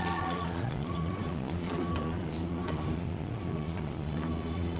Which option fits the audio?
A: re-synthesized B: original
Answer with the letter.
A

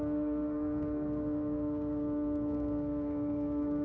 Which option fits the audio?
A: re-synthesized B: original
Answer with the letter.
A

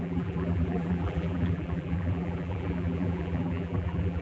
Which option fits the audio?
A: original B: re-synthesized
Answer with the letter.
B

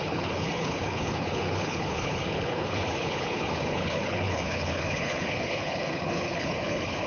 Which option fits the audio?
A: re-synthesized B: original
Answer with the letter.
A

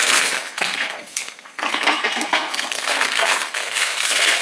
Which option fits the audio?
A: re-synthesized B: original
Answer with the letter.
A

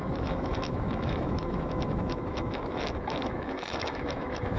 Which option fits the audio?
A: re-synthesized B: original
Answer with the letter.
A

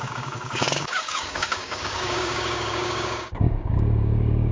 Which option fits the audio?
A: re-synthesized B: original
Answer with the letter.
A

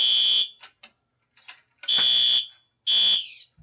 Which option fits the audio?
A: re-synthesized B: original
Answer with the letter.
B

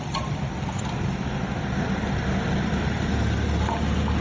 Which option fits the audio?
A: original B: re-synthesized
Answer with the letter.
A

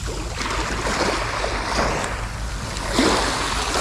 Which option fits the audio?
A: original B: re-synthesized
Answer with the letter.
A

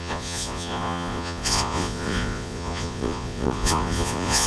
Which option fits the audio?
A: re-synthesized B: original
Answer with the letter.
A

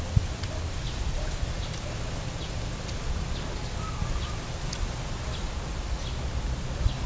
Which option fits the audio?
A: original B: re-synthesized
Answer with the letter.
A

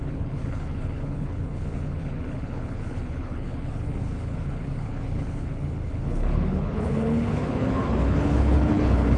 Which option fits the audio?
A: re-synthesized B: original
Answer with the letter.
A